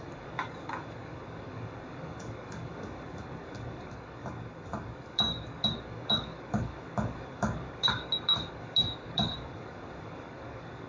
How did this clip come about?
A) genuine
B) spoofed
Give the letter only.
B